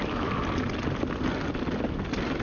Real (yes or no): yes